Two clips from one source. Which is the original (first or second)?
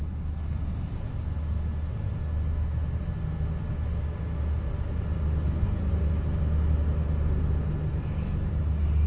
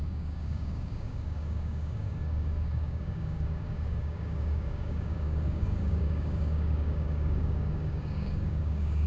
first